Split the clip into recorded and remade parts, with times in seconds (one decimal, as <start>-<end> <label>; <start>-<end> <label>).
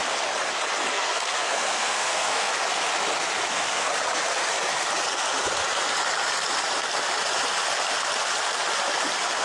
0.0-0.9 recorded; 0.9-2.5 remade; 2.5-3.5 recorded; 3.5-3.9 remade; 3.9-9.4 recorded